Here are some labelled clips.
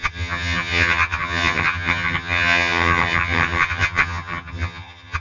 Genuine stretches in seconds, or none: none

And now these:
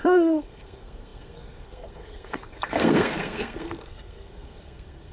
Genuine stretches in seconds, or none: none

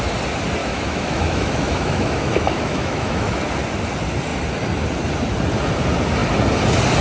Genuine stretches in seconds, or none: 0.0-0.6; 3.4-7.0